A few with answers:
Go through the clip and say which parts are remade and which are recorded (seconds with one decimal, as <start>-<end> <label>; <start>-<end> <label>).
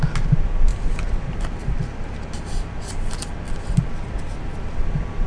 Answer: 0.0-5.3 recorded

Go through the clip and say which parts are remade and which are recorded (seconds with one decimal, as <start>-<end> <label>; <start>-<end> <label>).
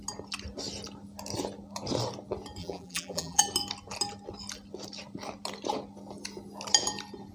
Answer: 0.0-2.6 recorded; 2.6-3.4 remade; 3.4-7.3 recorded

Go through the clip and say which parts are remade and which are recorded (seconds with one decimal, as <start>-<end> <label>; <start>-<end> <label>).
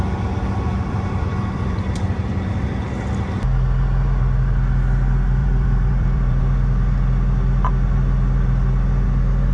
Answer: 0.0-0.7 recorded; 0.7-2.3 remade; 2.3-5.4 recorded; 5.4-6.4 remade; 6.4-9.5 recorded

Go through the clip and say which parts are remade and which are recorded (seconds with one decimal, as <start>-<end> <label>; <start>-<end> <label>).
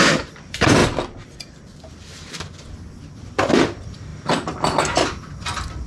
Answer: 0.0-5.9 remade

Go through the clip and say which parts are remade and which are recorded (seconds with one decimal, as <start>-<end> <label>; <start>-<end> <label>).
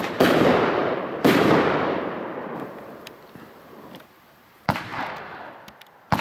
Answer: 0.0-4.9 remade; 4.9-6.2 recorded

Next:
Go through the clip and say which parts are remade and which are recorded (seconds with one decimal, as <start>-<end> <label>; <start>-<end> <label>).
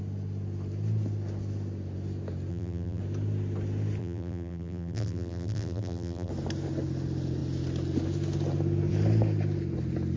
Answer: 0.0-2.5 recorded; 2.5-3.0 remade; 3.0-4.0 recorded; 4.0-6.3 remade; 6.3-10.2 recorded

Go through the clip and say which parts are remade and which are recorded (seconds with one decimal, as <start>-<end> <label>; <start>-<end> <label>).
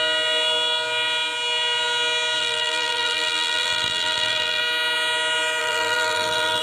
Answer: 0.0-2.4 recorded; 2.4-4.6 remade; 4.6-5.6 recorded; 5.6-6.6 remade